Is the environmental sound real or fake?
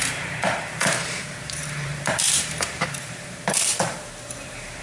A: fake